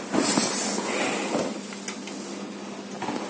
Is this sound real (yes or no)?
yes